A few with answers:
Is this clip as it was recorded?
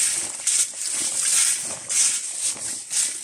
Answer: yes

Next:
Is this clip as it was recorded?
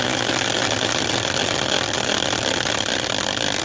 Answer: yes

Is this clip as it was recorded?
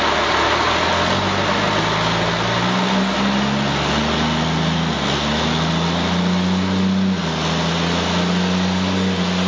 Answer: yes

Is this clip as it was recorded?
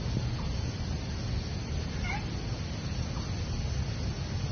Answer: yes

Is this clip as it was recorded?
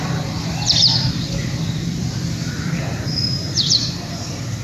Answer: no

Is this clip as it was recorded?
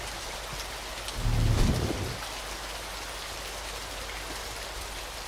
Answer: yes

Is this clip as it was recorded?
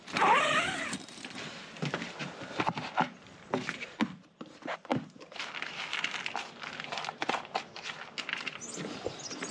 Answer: yes